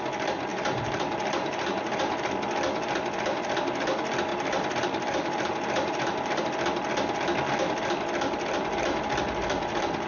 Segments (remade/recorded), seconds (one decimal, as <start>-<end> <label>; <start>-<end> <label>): 0.0-0.5 recorded; 0.5-2.2 remade; 2.2-4.3 recorded; 4.3-6.4 remade; 6.4-10.1 recorded

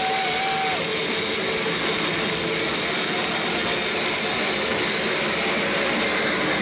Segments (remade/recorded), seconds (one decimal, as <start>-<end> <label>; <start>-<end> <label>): 0.0-6.6 recorded